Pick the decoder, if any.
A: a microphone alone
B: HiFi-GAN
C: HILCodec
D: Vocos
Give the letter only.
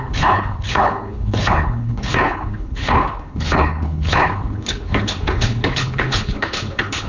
C